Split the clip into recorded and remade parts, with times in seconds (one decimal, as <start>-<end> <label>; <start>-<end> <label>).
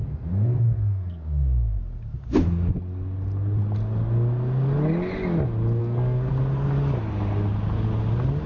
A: 0.0-1.8 remade; 1.8-5.8 recorded; 5.8-6.3 remade; 6.3-8.5 recorded